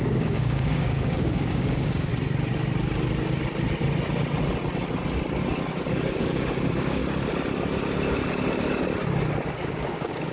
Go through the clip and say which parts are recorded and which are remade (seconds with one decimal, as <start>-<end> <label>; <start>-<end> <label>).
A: 0.0-2.1 remade; 2.1-6.2 recorded; 6.2-7.0 remade; 7.0-9.5 recorded; 9.5-10.3 remade